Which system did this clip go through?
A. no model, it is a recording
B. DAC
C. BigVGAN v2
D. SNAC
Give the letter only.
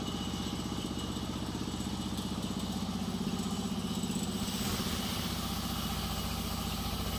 A